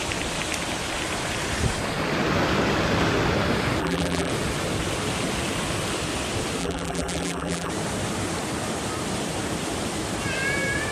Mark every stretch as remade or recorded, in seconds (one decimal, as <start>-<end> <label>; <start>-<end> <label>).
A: 0.0-3.8 recorded; 3.8-4.3 remade; 4.3-6.6 recorded; 6.6-7.7 remade; 7.7-10.9 recorded